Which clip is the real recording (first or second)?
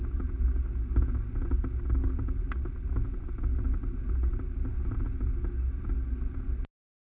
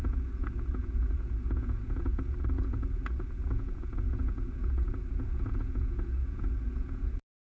first